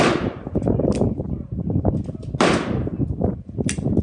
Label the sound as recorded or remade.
recorded